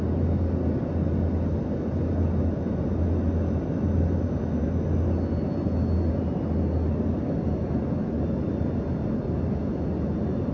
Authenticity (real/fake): real